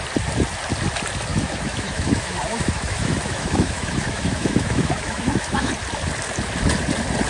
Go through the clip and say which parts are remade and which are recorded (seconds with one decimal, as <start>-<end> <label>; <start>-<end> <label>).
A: 0.0-1.3 recorded; 1.3-5.7 remade; 5.7-7.3 recorded